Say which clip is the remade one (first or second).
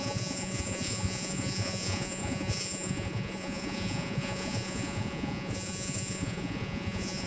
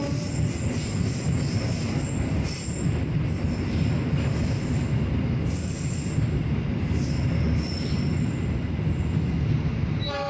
first